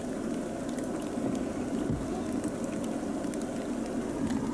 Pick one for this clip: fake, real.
real